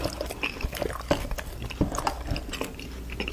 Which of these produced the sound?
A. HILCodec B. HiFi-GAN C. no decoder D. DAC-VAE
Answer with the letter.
C